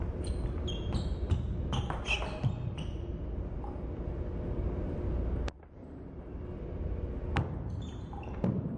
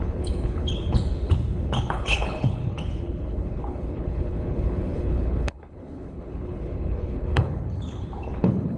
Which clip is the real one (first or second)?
first